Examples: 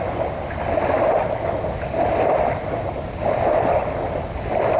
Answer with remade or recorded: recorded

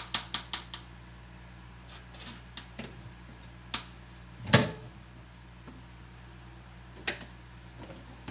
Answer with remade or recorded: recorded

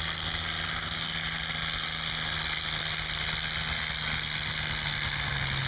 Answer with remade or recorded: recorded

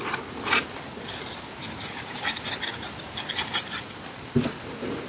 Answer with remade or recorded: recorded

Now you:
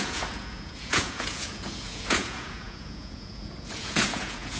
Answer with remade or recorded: remade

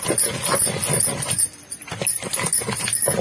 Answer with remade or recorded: recorded